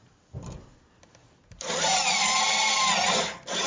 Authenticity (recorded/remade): recorded